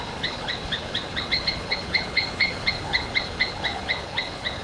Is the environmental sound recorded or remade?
remade